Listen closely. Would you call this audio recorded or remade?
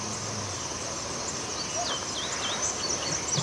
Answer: recorded